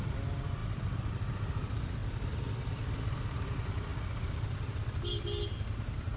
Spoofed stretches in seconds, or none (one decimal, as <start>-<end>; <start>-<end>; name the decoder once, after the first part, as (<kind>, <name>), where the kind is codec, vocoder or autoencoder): none